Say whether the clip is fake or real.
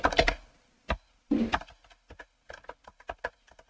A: real